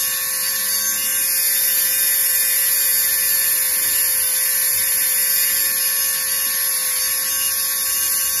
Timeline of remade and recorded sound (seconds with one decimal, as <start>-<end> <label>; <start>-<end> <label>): 0.0-8.4 recorded